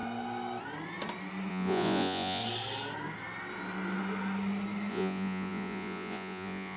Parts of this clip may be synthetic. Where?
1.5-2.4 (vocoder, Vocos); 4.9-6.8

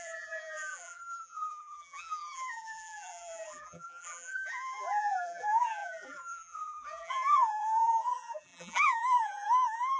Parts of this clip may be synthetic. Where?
0.0-10.0 (vocoder, BigVGAN v2)

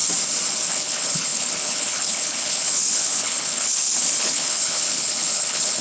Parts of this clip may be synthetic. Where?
0.7-5.8 (codec, HILCodec)

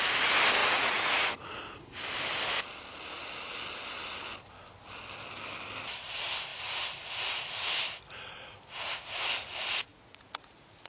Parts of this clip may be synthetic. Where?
0.6-1.6 (vocoder, Vocos); 9.9-10.9

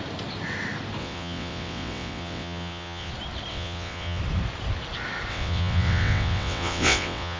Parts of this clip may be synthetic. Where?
1.0-3.1 (vocoder, WaveNeXt); 3.5-4.2; 5.3-7.4

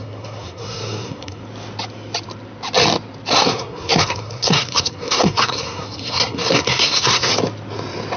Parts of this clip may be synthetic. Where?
0.0-1.4 (codec, SNAC); 3.3-7.3

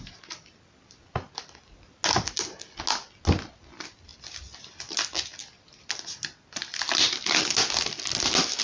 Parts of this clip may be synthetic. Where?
none

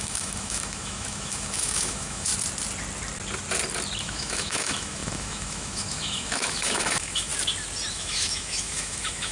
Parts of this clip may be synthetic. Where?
0.0-2.3 (autoencoder, DAC-VAE); 4.0-7.3; 7.9-9.3